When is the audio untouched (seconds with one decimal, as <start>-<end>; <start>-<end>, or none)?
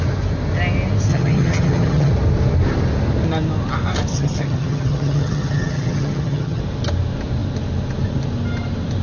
0.0-1.1; 2.1-4.1; 6.6-9.0